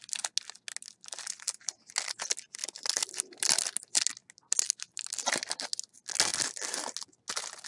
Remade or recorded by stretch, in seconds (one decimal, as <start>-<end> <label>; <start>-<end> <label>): 0.0-7.7 recorded